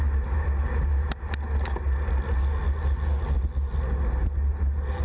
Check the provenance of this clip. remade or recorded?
recorded